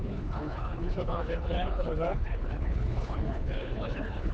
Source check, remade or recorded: remade